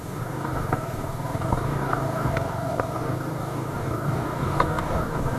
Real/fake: fake